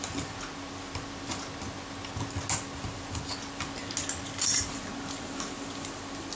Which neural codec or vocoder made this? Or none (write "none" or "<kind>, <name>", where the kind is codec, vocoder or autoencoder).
none